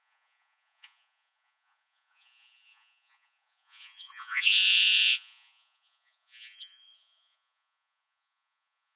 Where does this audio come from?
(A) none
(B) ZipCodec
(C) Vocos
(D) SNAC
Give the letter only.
C